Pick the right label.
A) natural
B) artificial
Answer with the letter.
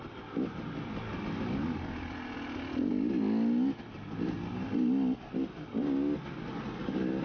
A